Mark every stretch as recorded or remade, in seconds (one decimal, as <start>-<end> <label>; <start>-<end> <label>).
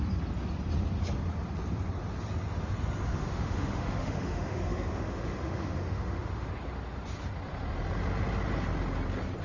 0.0-3.2 recorded; 3.2-6.5 remade; 6.5-9.4 recorded